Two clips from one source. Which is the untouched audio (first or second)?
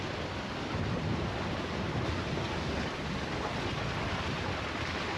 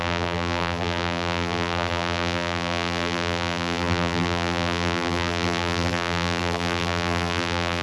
first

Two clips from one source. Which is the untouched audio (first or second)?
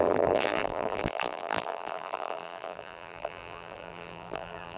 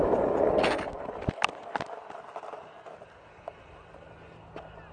second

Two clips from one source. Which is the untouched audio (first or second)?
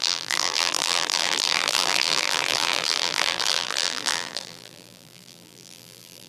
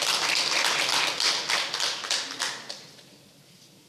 second